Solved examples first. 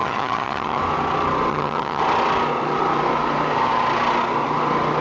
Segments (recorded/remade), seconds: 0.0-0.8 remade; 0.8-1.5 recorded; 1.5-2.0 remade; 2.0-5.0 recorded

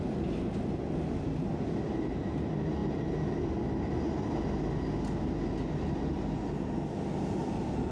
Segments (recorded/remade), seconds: 0.0-7.9 recorded

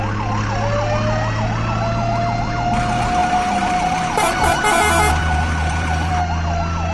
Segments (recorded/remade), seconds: 0.0-3.2 recorded; 3.2-4.6 remade; 4.6-5.2 recorded; 5.2-6.1 remade; 6.1-6.9 recorded

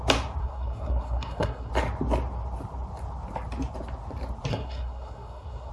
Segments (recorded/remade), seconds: 0.0-0.4 recorded; 0.4-1.7 remade; 1.7-4.5 recorded; 4.5-5.7 remade

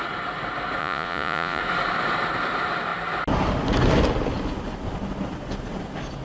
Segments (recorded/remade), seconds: 0.0-0.8 recorded; 0.8-1.6 remade; 1.6-6.2 recorded

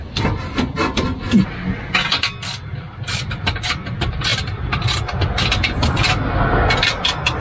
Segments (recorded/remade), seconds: 0.0-7.4 recorded

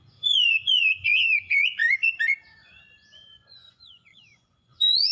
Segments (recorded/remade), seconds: 0.0-5.1 remade